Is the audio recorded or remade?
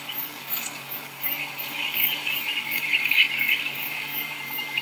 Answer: remade